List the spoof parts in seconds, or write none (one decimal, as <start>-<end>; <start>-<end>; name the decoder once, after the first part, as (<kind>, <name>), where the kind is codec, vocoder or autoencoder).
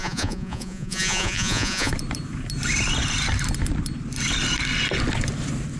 0.0-1.9 (vocoder, Vocos)